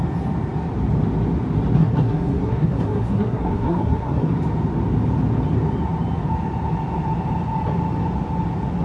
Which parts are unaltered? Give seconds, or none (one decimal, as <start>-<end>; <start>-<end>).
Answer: 0.0-1.8; 4.3-8.8